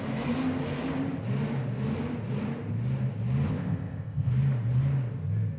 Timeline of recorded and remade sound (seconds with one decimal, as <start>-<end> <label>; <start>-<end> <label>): 0.0-3.5 recorded; 3.5-4.3 remade; 4.3-5.6 recorded